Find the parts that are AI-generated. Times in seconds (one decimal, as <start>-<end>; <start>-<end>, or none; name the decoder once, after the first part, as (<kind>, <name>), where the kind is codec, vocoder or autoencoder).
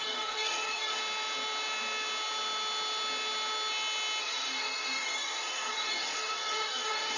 0.0-1.0 (codec, DAC); 4.2-7.2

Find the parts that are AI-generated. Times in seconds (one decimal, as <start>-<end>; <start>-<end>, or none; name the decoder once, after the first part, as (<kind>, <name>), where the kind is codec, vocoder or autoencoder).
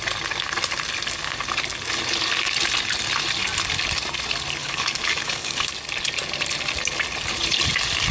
4.6-5.7 (codec, DAC)